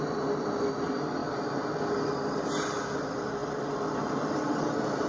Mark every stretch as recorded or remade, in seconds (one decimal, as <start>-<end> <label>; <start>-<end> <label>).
0.0-1.2 recorded; 1.2-2.4 remade; 2.4-3.4 recorded; 3.4-4.5 remade; 4.5-5.1 recorded